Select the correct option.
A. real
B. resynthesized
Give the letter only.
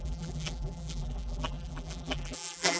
B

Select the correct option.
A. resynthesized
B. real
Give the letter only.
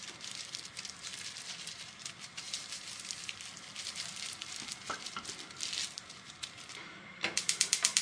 A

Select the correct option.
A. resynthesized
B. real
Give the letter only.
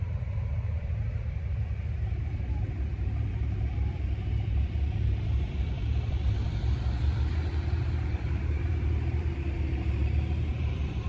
A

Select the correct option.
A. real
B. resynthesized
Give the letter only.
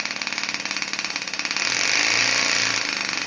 A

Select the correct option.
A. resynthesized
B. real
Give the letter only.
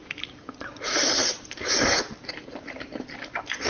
A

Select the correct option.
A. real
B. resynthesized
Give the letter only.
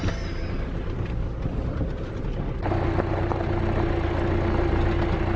A